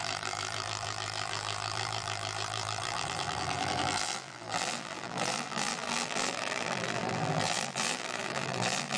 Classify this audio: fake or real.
fake